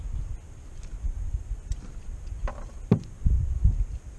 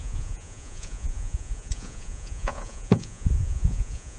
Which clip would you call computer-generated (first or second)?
second